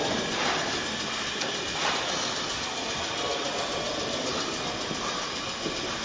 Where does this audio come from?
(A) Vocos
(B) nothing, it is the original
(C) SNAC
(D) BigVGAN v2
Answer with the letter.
B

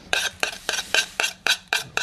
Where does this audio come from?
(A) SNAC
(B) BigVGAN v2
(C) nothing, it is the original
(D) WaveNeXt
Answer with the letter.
B